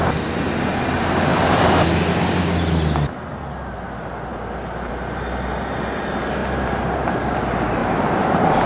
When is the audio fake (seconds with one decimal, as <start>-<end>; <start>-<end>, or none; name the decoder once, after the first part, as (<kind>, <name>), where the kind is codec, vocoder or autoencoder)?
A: 1.3-1.8 (vocoder, BigVGAN v2); 6.4-7.2; 7.8-8.7